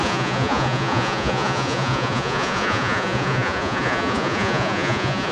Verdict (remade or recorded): remade